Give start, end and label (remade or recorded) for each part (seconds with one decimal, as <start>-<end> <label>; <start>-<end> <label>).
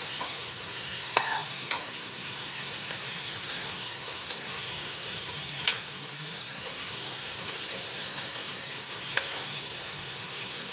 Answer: 0.0-10.7 remade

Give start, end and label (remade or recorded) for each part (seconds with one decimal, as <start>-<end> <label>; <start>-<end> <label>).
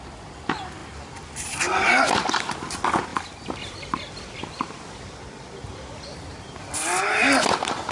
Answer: 0.0-0.8 recorded; 0.8-2.4 remade; 2.4-3.1 recorded; 3.1-4.4 remade; 4.4-7.9 recorded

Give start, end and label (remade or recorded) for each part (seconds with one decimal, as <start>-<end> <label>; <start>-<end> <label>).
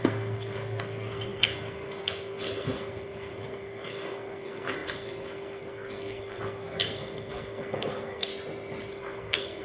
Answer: 0.0-8.3 remade; 8.3-8.9 recorded; 8.9-9.6 remade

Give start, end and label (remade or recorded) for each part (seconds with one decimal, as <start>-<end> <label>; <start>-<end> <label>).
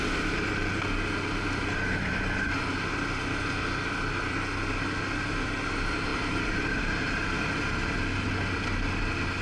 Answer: 0.0-6.1 recorded; 6.1-8.1 remade; 8.1-9.4 recorded